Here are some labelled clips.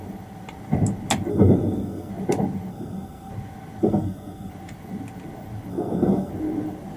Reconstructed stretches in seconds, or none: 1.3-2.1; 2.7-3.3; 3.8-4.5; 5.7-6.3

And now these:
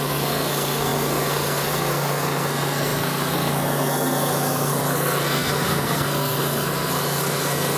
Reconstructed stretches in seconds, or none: 0.0-7.8

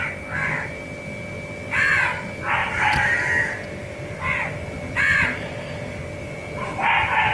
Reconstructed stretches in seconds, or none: 2.6-3.1

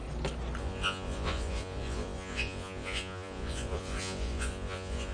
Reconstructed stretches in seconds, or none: 0.6-5.1

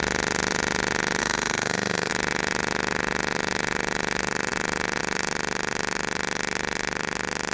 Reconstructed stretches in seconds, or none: 1.2-2.1

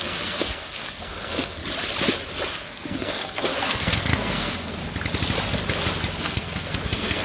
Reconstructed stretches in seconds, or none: 0.0-1.6; 2.5-4.8; 6.2-7.2

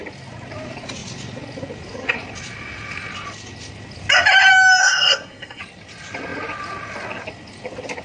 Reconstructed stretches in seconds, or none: 4.8-5.6